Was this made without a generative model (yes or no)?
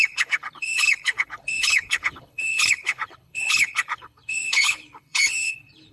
no